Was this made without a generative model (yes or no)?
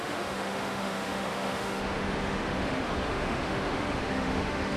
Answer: no